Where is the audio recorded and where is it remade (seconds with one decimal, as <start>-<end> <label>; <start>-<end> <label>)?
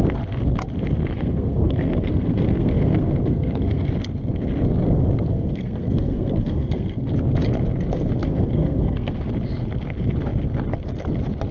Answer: 0.0-1.0 recorded; 1.0-3.9 remade; 3.9-5.3 recorded; 5.3-7.1 remade; 7.1-8.2 recorded; 8.2-9.3 remade; 9.3-11.5 recorded